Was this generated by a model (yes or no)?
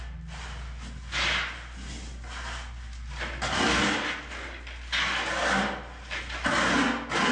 no